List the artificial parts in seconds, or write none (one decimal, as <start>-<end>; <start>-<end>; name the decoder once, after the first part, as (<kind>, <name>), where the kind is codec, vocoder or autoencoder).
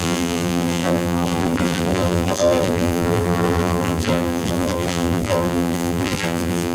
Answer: 0.0-6.7 (vocoder, BigVGAN v2)